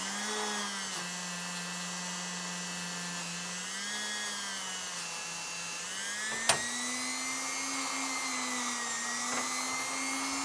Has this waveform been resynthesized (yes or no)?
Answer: no